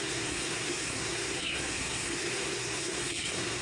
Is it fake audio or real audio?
fake